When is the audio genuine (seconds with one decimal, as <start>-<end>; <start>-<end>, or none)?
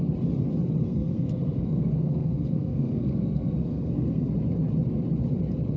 0.0-0.8; 4.3-5.8